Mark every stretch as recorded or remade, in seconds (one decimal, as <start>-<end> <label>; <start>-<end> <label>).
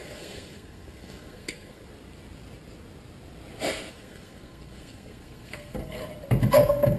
0.0-1.8 remade; 1.8-3.9 recorded; 3.9-6.0 remade; 6.0-6.5 recorded; 6.5-7.0 remade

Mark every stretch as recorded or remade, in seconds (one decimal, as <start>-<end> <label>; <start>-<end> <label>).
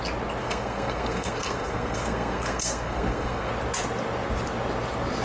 0.0-0.4 recorded; 0.4-3.5 remade; 3.5-5.2 recorded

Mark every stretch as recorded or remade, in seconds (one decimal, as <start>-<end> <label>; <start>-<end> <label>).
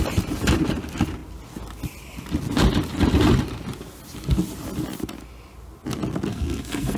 0.0-6.3 recorded; 6.3-7.0 remade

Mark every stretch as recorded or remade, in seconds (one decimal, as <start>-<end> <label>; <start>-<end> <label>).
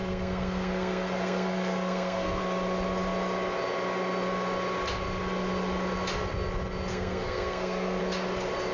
0.0-2.4 remade; 2.4-6.9 recorded; 6.9-8.0 remade; 8.0-8.7 recorded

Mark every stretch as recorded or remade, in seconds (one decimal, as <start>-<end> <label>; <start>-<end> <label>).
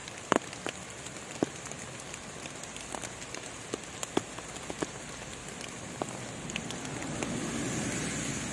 0.0-8.5 recorded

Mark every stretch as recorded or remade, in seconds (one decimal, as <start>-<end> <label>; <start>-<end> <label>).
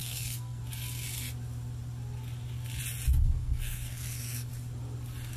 0.0-0.6 remade; 0.6-3.2 recorded; 3.2-4.5 remade; 4.5-5.4 recorded